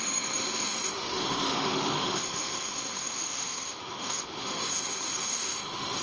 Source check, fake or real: fake